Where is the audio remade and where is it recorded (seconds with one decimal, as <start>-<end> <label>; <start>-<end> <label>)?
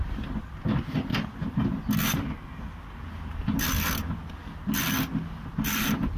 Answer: 0.0-6.2 recorded